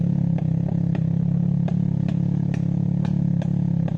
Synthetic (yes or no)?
no